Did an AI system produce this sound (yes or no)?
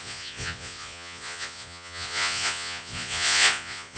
yes